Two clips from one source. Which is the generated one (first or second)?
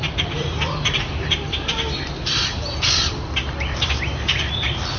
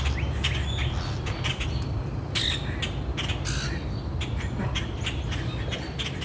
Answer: first